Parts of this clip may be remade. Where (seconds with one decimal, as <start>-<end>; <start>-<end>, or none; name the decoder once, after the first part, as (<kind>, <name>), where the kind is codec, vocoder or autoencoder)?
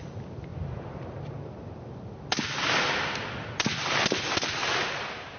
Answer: none